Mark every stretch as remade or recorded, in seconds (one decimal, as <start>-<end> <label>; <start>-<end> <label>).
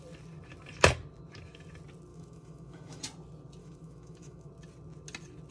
0.0-2.1 recorded; 2.1-3.0 remade; 3.0-3.6 recorded; 3.6-4.5 remade; 4.5-5.5 recorded